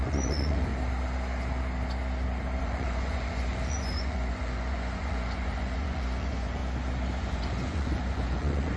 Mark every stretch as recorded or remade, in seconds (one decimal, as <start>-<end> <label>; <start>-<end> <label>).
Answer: 0.0-0.7 remade; 0.7-2.6 recorded; 2.6-6.6 remade; 6.6-7.2 recorded; 7.2-8.8 remade